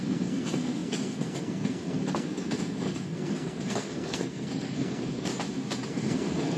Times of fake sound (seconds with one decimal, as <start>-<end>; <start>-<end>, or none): 0.0-5.3; 5.9-6.6